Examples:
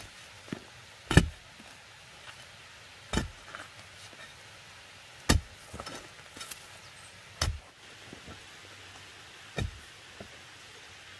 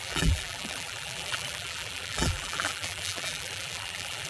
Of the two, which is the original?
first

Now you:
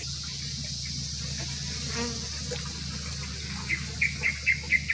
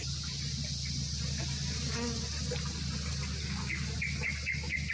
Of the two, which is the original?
first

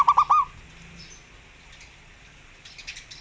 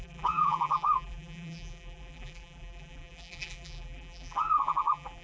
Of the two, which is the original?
first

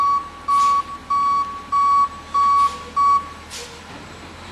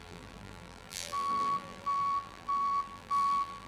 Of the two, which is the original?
first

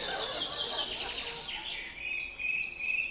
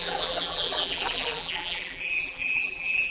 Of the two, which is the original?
first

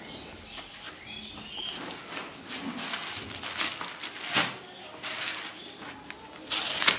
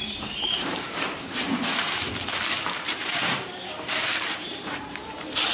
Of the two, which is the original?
first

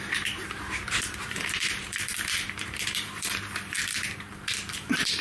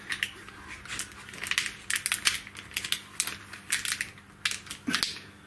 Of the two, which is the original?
second